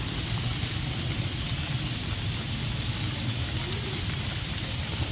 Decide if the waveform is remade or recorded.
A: recorded